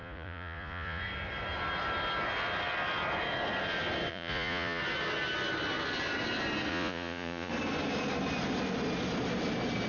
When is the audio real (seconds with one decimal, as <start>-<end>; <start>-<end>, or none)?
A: 1.0-4.1; 4.8-6.7; 7.5-9.9